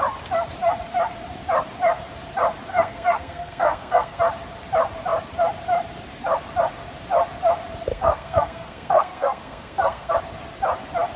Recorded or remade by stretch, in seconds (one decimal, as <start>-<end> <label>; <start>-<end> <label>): 0.0-2.7 recorded; 2.7-4.2 remade; 4.2-7.9 recorded; 7.9-10.1 remade; 10.1-11.2 recorded